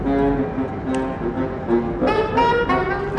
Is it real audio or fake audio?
real